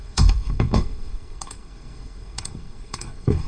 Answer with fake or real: fake